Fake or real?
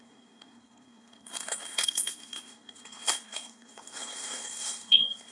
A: fake